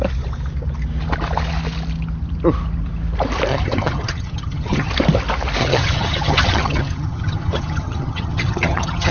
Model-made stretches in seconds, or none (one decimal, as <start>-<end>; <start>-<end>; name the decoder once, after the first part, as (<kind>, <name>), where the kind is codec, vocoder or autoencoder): 3.5-4.9 (vocoder, HiFi-GAN); 5.6-9.1

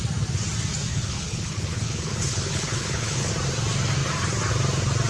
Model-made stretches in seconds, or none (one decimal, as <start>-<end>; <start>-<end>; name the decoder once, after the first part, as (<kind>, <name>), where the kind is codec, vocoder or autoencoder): 0.9-3.3 (codec, HILCodec)

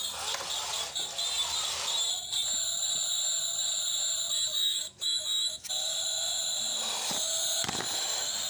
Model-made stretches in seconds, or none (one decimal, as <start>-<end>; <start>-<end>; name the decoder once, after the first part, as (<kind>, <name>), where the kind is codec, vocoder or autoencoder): 4.6-5.7 (autoencoder, DAC-VAE)

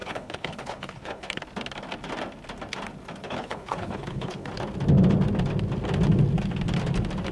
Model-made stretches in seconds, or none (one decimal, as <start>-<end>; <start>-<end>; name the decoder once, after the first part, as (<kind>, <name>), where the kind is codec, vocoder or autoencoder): 0.0-1.4 (codec, HILCodec); 3.2-4.5

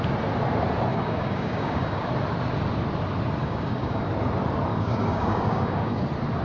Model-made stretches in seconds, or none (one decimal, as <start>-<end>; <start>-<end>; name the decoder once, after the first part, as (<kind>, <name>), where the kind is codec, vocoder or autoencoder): 0.9-2.1 (codec, DAC); 3.4-4.1; 4.7-6.0

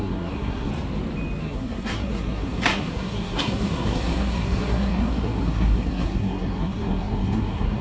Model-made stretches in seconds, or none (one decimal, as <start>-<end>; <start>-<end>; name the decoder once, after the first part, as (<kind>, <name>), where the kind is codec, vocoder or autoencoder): 0.0-0.7 (codec, SNAC); 1.4-7.8